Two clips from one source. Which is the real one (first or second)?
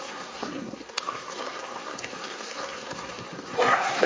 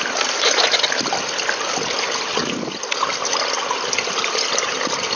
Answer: second